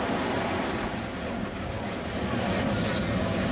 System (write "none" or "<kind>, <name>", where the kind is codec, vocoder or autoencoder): none